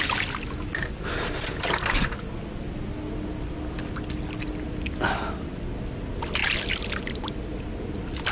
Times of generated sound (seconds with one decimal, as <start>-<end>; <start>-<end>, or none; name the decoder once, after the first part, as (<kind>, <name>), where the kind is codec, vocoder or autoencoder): none